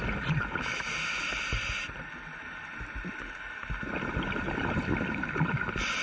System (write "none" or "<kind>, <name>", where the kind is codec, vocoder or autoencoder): none